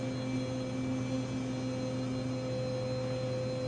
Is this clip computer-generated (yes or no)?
no